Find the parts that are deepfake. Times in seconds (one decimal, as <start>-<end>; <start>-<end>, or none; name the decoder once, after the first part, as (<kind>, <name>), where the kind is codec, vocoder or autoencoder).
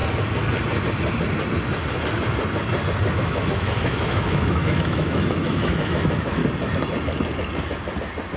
3.1-6.4 (autoencoder, DAC-VAE)